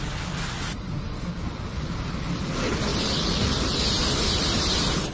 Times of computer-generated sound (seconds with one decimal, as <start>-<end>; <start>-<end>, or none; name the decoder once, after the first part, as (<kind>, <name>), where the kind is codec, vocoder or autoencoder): none